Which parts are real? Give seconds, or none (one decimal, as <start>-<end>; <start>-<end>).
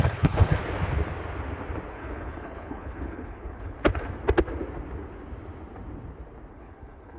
0.6-1.9; 3.9-6.5